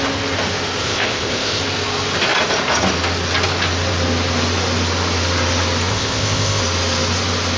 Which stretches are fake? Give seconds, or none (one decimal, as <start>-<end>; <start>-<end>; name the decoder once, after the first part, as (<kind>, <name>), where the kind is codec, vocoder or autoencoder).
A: 0.8-1.6 (codec, ZipCodec); 5.9-6.6